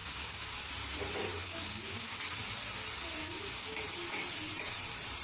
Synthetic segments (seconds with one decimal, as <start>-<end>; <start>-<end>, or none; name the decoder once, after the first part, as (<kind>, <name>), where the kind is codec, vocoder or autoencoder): 0.0-0.7 (codec, DAC); 1.4-2.2; 3.2-3.8